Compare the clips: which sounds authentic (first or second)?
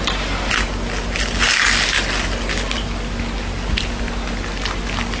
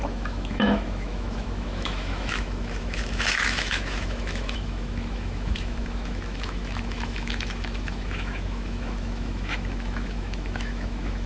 first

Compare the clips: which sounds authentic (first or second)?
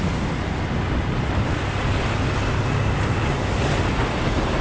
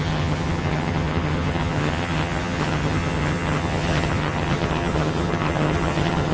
first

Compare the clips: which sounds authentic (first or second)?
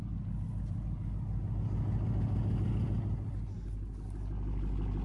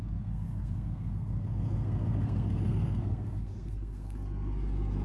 first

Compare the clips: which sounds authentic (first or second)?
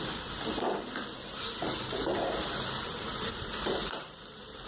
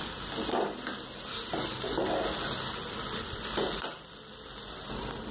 second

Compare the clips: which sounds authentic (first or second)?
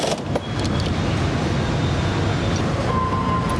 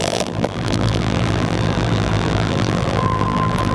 first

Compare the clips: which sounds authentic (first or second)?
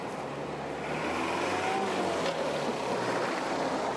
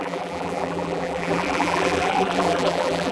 first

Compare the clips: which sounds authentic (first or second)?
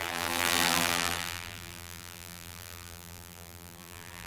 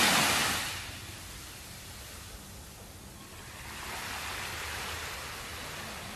second